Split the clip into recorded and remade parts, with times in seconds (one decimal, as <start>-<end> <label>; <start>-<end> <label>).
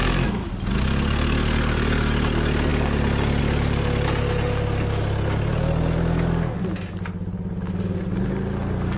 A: 0.0-0.5 remade; 0.5-9.0 recorded